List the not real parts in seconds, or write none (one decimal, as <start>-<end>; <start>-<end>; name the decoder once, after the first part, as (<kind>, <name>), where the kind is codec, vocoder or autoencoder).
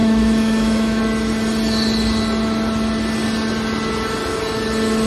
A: 0.0-1.0 (autoencoder, DAC-VAE)